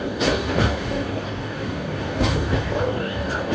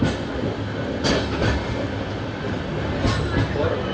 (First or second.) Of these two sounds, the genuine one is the second